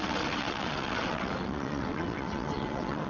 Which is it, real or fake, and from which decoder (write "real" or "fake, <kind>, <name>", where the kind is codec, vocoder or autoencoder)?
fake, vocoder, WaveNeXt